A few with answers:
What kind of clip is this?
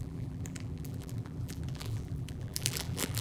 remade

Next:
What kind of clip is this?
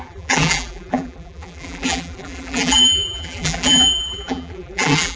remade